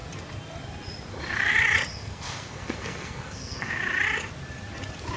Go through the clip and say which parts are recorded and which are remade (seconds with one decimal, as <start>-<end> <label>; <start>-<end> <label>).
0.0-1.9 recorded; 1.9-3.7 remade; 3.7-5.2 recorded